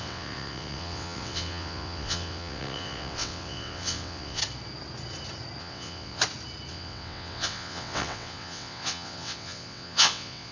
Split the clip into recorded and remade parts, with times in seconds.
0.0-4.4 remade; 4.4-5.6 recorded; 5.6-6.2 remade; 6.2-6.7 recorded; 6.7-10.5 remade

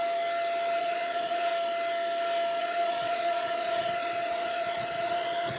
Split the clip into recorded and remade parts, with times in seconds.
0.0-0.8 recorded; 0.8-1.5 remade; 1.5-2.6 recorded; 2.6-5.6 remade